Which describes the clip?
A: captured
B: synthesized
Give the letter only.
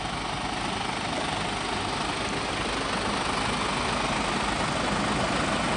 A